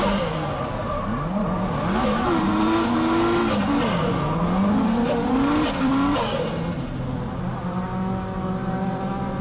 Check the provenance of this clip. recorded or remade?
recorded